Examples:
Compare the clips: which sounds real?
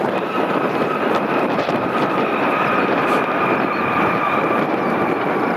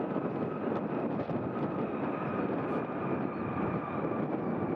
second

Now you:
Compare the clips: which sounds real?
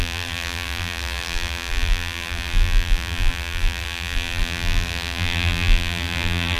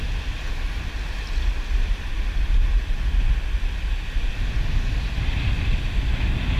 second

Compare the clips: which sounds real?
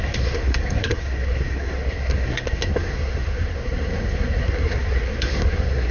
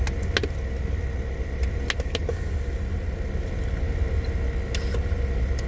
second